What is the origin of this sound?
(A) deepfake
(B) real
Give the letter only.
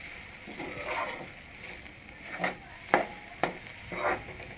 B